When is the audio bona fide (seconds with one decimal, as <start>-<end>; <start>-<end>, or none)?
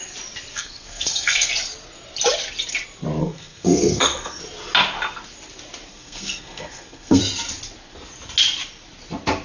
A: 0.0-0.5; 1.5-3.2; 4.4-5.9; 7.2-9.4